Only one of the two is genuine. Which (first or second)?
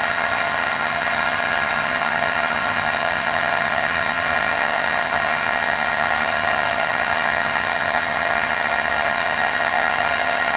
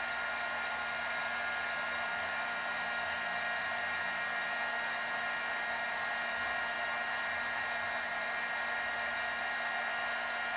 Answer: second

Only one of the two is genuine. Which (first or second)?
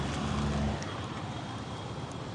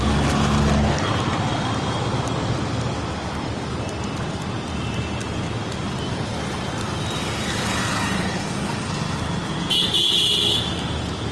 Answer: second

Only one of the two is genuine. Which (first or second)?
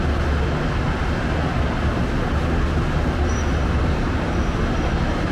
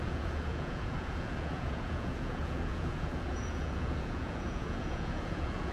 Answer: first